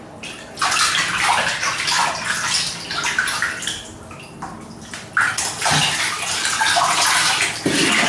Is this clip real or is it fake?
real